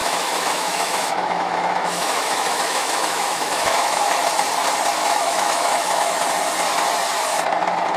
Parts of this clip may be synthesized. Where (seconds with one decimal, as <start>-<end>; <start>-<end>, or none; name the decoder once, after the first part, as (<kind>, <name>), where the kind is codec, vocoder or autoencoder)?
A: 0.0-4.2 (autoencoder, DAC-VAE); 5.0-6.2